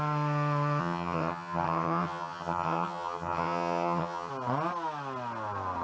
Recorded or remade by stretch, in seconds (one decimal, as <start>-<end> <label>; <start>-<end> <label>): 0.0-0.8 recorded; 0.8-4.3 remade; 4.3-5.8 recorded